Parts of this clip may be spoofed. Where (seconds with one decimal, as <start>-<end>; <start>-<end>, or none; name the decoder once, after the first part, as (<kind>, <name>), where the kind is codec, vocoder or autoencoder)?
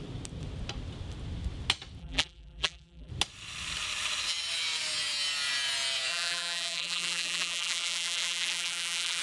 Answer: 2.0-3.1 (vocoder, BigVGAN v2); 6.1-9.2